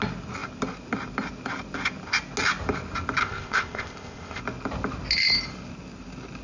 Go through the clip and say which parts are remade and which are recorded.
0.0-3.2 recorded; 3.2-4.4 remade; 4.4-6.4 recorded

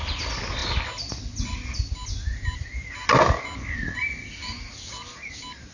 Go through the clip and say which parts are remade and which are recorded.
0.0-5.7 recorded

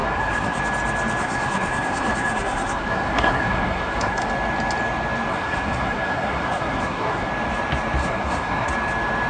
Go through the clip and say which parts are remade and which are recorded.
0.0-0.6 remade; 0.6-1.2 recorded; 1.2-4.3 remade; 4.3-5.3 recorded; 5.3-7.3 remade; 7.3-8.0 recorded; 8.0-8.7 remade; 8.7-9.3 recorded

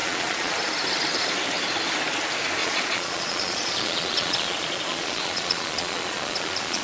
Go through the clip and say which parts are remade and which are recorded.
0.0-0.5 remade; 0.5-2.6 recorded; 2.6-6.8 remade

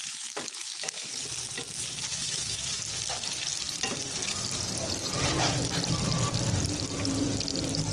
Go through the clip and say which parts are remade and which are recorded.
0.0-1.1 remade; 1.1-2.1 recorded; 2.1-2.8 remade; 2.8-7.9 recorded

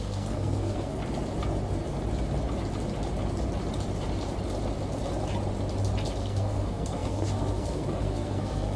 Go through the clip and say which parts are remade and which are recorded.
0.0-1.0 remade; 1.0-6.2 recorded; 6.2-8.8 remade